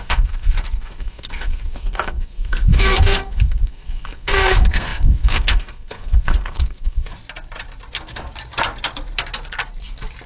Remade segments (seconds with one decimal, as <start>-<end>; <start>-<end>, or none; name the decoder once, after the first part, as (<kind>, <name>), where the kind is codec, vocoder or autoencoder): 0.0-7.1 (codec, SNAC)